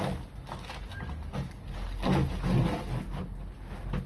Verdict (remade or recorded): recorded